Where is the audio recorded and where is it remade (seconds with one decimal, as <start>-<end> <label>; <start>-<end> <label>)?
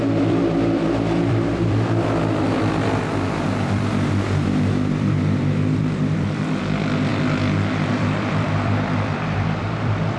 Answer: 0.0-7.1 remade; 7.1-7.9 recorded; 7.9-10.2 remade